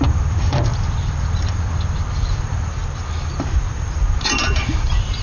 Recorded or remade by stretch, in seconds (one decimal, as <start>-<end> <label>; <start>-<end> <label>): 0.0-0.7 remade; 0.7-2.1 recorded; 2.1-2.8 remade; 2.8-3.3 recorded; 3.3-5.2 remade